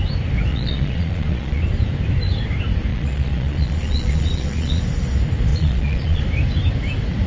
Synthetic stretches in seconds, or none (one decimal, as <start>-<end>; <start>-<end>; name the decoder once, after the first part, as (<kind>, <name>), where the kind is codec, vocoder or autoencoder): 0.5-1.6 (vocoder, Vocos); 2.9-4.8; 5.5-6.2